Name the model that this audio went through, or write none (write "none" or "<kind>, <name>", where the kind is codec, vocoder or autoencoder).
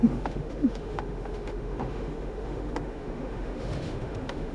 autoencoder, DAC-VAE